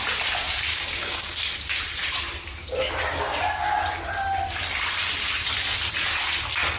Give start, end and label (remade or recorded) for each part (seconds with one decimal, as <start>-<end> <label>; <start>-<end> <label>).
0.0-0.7 recorded; 0.7-1.3 remade; 1.3-6.8 recorded